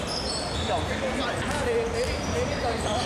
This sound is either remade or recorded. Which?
recorded